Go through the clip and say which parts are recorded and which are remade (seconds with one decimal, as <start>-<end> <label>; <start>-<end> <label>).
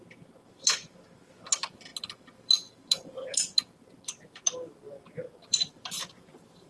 0.0-6.7 recorded